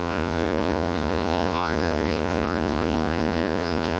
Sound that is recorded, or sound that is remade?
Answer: remade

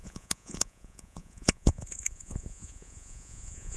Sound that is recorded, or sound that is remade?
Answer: remade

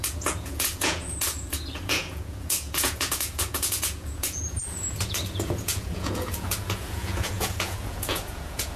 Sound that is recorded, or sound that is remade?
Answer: remade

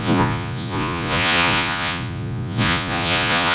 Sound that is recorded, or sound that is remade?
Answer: remade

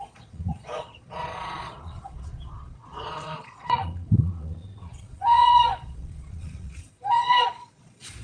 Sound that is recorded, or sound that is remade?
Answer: remade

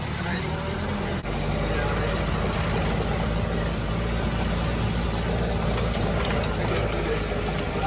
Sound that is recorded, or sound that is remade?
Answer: recorded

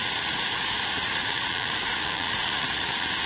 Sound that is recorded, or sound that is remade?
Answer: remade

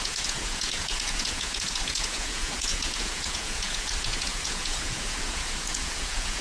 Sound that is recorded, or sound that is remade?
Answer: remade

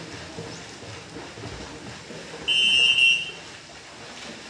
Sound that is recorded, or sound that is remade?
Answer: recorded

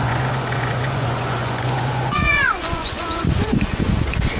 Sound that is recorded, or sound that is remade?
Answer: remade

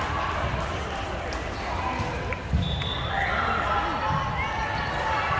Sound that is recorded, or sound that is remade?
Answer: recorded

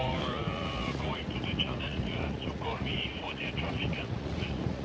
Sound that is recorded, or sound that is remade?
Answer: remade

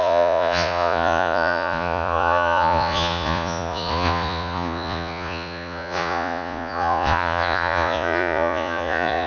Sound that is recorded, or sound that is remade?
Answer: remade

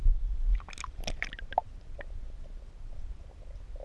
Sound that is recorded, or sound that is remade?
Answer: recorded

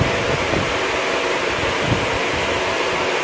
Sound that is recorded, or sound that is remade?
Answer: recorded